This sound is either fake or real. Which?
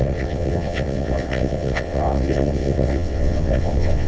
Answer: fake